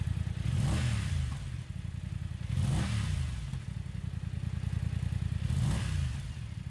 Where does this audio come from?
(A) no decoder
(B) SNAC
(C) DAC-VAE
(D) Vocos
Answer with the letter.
A